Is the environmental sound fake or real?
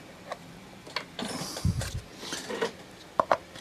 real